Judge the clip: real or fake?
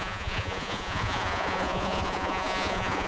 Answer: fake